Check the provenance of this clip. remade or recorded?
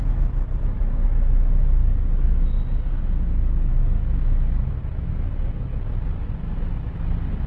recorded